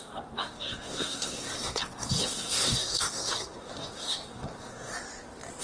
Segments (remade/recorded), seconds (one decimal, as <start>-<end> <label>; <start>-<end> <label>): 0.0-4.9 remade; 4.9-5.6 recorded